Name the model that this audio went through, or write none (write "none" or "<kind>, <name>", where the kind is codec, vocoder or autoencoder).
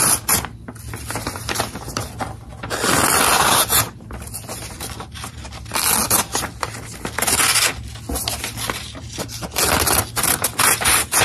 none